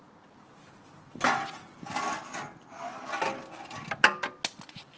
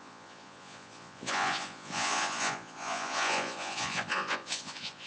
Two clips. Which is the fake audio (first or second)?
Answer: second